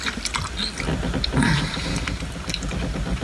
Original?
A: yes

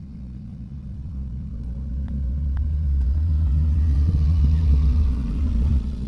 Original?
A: no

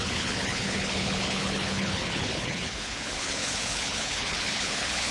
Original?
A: no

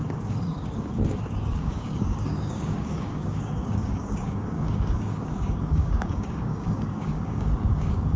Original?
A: no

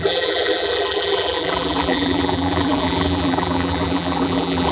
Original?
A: no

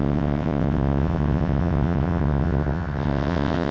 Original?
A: no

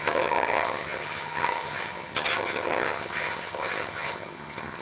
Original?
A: no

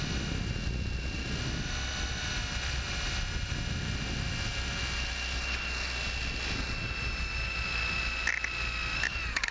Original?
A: yes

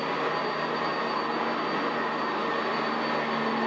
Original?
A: yes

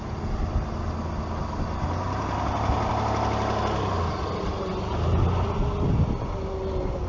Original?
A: yes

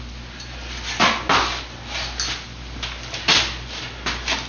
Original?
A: yes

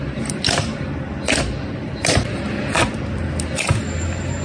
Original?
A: yes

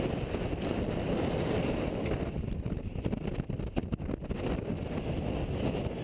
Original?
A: yes